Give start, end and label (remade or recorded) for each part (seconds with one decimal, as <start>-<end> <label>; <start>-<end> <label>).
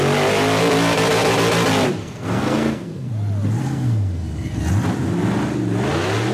0.0-2.0 recorded; 2.0-3.1 remade; 3.1-3.6 recorded; 3.6-4.6 remade; 4.6-6.3 recorded